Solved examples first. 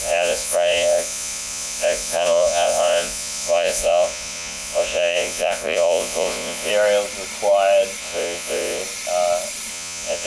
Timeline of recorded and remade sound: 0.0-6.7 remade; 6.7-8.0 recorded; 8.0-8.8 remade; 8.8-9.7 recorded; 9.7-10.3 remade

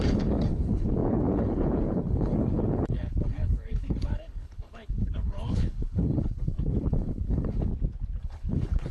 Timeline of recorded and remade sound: 0.0-7.7 remade; 7.7-8.2 recorded; 8.2-8.9 remade

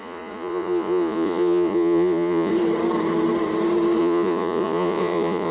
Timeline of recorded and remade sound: 0.0-2.5 remade; 2.5-4.0 recorded; 4.0-5.5 remade

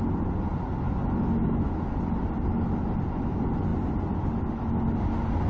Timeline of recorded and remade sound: 0.0-5.5 recorded

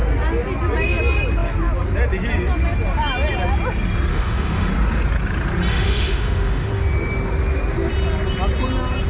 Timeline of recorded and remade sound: 0.0-4.1 recorded; 4.1-4.7 remade; 4.7-5.7 recorded; 5.7-6.7 remade; 6.7-9.1 recorded

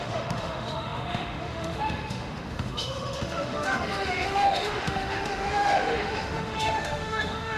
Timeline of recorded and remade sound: 0.0-7.6 remade

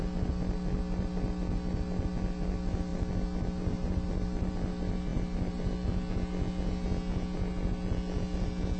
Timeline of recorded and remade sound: 0.0-8.8 recorded